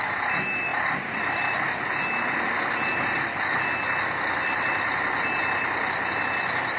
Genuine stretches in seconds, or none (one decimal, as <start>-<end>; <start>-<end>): 0.0-6.8